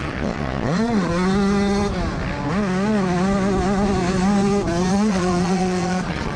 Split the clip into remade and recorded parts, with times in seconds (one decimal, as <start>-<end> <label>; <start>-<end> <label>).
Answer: 0.0-1.1 remade; 1.1-4.9 recorded; 4.9-6.4 remade